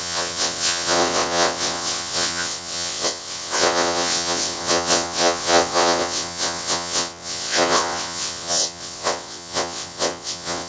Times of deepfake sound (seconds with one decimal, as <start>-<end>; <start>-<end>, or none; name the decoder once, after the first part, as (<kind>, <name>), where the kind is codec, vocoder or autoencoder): 0.0-10.7 (vocoder, WaveNeXt)

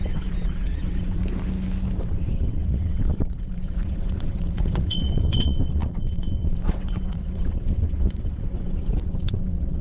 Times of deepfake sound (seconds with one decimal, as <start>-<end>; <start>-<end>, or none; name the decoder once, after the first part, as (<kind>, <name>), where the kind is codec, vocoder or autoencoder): 0.0-1.2 (vocoder, WaveNeXt); 2.0-9.8